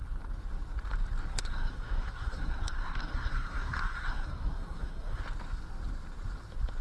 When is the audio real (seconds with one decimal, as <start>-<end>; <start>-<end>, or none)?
0.0-1.3; 5.2-6.8